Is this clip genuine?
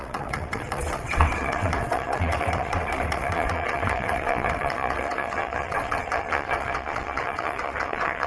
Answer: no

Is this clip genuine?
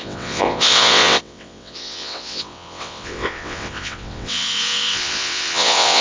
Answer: no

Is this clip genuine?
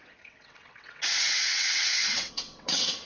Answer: no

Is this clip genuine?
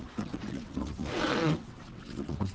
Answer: no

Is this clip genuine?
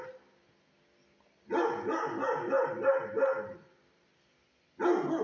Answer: yes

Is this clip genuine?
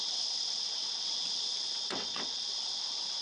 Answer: no